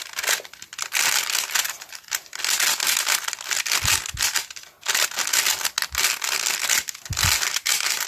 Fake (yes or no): no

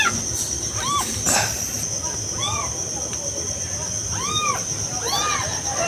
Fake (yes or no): no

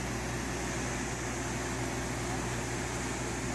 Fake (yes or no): no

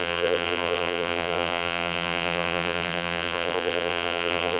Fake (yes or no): yes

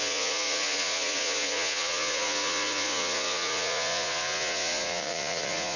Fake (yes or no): yes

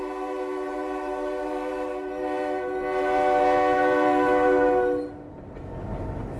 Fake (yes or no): yes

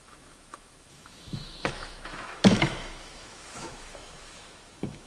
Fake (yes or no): yes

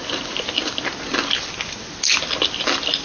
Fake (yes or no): no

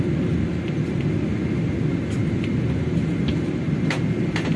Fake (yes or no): no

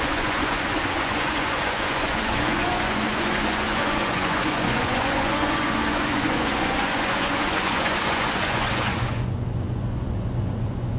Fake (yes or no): yes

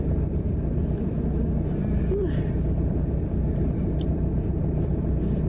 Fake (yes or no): yes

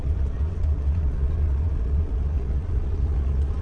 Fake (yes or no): yes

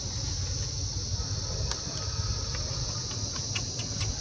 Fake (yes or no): no